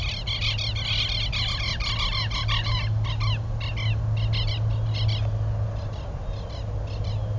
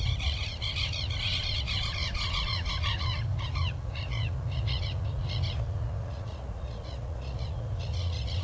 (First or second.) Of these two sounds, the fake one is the second